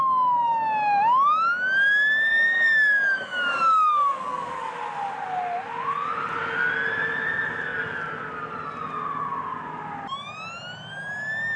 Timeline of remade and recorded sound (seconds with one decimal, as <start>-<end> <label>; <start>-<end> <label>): 0.0-2.3 recorded; 2.3-4.7 remade; 4.7-11.6 recorded